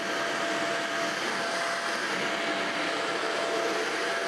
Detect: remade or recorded recorded